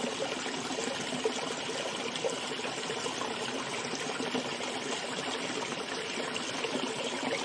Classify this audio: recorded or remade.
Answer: recorded